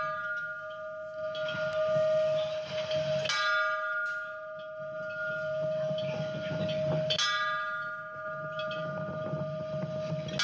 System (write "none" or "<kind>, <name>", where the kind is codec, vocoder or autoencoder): none